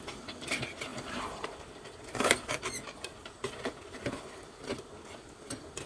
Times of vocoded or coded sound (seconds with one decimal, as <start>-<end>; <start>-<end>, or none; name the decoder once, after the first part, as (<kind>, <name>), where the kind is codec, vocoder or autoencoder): none